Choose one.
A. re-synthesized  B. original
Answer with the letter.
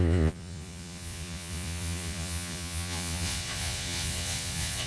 A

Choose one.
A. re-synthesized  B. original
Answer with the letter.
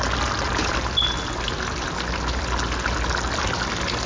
B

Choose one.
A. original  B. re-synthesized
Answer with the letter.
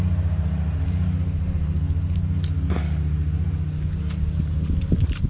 A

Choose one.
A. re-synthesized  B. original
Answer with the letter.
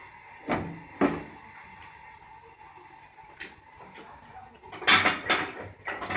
B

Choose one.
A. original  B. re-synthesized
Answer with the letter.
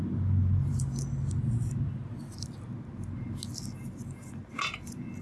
A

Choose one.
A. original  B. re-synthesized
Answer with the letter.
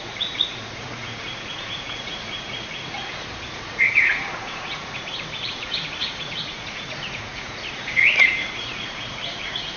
B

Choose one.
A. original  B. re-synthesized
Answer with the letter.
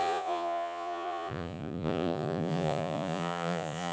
B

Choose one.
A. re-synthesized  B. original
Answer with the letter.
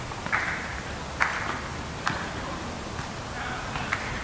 B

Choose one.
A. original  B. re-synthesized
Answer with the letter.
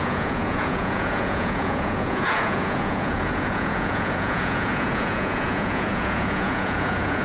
B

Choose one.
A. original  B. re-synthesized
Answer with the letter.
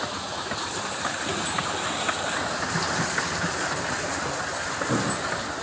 A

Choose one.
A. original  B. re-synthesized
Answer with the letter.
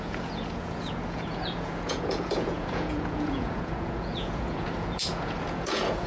B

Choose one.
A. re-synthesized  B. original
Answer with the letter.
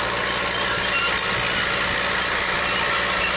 B